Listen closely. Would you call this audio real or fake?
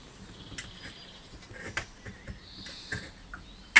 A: real